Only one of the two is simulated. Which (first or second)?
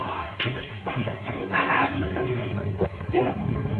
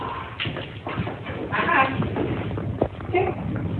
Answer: first